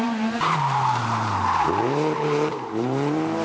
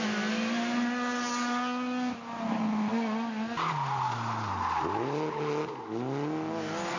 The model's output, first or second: first